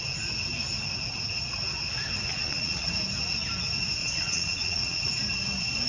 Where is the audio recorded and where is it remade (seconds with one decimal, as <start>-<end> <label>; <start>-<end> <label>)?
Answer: 0.0-2.3 recorded; 2.3-2.9 remade; 2.9-4.0 recorded; 4.0-5.1 remade; 5.1-5.9 recorded